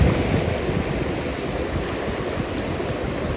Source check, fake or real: real